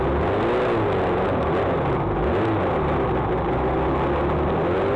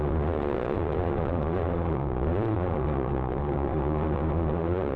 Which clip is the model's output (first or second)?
second